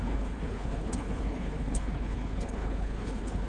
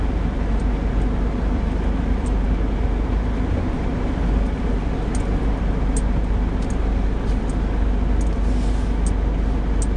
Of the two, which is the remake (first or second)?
first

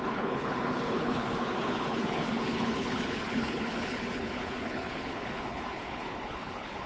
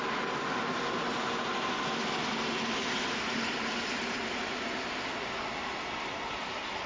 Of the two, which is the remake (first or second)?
first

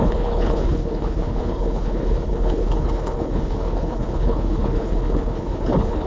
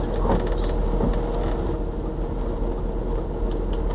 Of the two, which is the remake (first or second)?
first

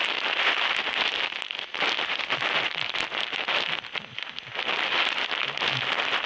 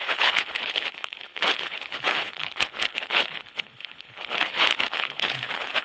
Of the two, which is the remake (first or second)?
second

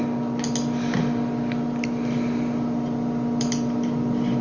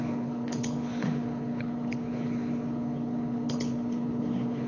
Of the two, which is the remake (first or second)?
second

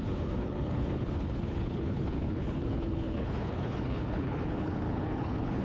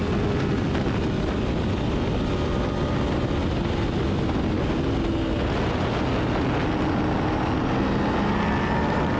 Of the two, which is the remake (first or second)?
first